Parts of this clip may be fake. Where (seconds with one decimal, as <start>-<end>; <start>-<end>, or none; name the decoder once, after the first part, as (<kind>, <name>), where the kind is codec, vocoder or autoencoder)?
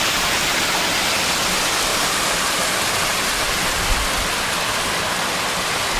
0.4-1.1 (vocoder, BigVGAN v2)